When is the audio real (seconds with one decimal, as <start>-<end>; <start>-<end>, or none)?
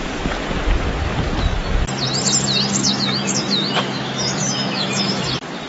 0.0-2.8; 5.2-5.7